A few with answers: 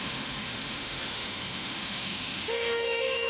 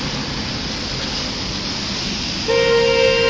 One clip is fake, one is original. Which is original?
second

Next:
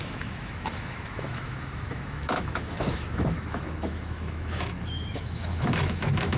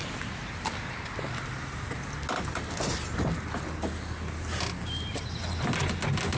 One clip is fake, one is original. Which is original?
second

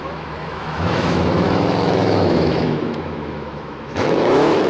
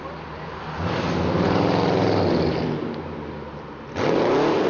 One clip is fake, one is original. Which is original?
second